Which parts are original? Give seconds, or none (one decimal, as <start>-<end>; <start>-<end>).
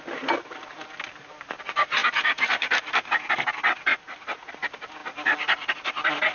0.0-2.0; 3.1-3.9; 4.5-6.3